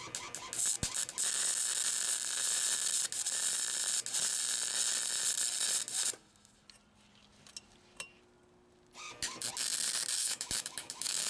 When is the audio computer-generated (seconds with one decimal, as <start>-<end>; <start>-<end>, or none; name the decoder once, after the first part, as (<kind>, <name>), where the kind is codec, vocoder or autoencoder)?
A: 10.2-11.3 (autoencoder, DAC-VAE)